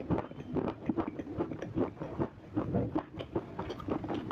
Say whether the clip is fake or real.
fake